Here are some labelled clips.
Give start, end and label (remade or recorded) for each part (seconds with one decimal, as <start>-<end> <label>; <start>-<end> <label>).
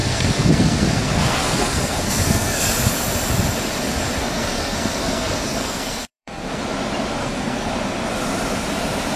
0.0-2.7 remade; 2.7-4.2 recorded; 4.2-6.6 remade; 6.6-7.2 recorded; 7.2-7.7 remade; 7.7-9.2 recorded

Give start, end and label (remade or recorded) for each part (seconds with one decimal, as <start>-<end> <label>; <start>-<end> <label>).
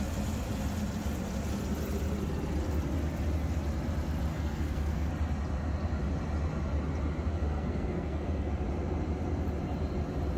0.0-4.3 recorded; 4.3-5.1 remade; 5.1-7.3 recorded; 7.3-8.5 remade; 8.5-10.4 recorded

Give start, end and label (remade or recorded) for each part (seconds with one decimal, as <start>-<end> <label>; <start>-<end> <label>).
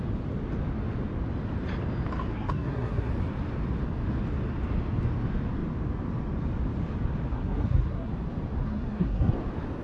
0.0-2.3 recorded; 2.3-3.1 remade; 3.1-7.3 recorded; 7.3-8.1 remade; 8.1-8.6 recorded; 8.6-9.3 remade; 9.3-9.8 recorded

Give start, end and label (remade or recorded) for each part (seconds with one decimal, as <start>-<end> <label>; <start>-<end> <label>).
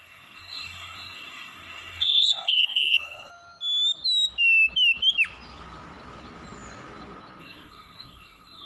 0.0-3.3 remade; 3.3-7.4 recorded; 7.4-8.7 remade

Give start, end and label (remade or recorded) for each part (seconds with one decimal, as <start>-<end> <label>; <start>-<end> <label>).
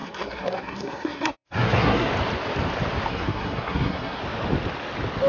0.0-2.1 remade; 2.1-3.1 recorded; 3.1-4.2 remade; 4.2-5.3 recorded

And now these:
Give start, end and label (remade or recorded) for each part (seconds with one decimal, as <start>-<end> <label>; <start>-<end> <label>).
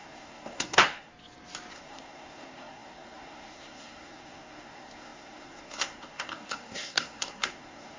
0.0-1.1 remade; 1.1-1.7 recorded; 1.7-8.0 remade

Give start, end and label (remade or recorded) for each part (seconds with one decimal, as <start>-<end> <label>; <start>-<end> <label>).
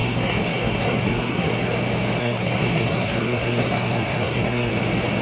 0.0-1.5 remade; 1.5-2.2 recorded; 2.2-4.7 remade; 4.7-5.2 recorded